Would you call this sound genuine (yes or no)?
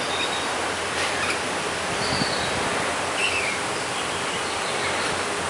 yes